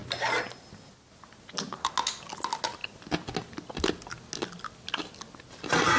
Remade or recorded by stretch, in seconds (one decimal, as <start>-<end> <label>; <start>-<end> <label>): 0.0-6.0 recorded